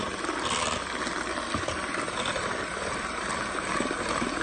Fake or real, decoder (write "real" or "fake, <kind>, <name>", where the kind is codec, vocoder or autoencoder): fake, vocoder, BigVGAN v2